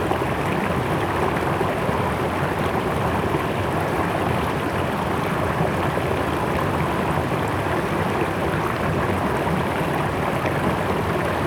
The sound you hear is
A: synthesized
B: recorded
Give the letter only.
B